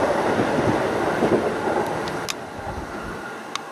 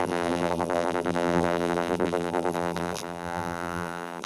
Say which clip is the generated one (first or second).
second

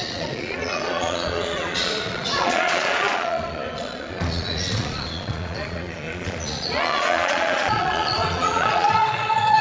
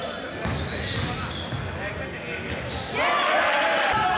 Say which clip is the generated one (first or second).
first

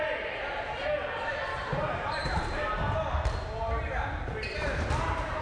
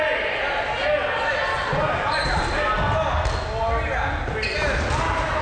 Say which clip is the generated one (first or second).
first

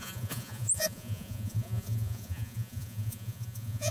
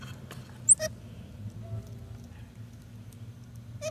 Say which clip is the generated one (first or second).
first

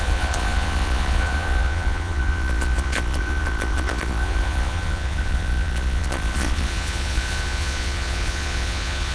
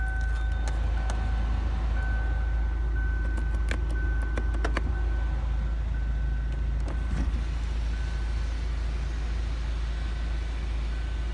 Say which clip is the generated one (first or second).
first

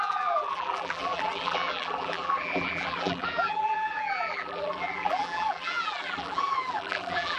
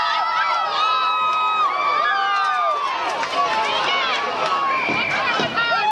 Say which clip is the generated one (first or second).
first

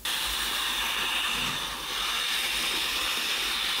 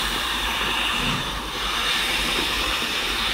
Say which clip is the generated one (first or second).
second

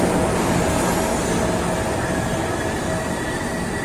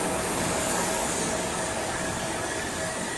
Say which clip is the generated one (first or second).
second